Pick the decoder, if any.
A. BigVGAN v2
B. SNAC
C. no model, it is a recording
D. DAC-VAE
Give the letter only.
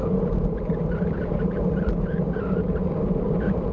A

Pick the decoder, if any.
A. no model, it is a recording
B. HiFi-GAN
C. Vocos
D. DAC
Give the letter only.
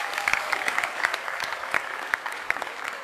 D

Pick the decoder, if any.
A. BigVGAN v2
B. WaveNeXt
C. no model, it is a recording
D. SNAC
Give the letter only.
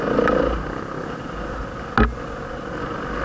C